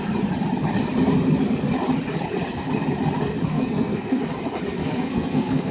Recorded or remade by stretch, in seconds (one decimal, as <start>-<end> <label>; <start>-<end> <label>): 0.0-3.5 recorded; 3.5-4.2 remade; 4.2-4.8 recorded; 4.8-5.7 remade